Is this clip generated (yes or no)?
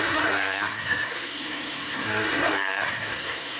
yes